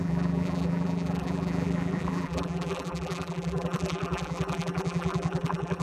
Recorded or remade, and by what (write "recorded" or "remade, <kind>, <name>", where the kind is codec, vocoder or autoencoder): remade, vocoder, BigVGAN v2